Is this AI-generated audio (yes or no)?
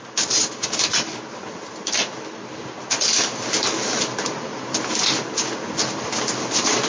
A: no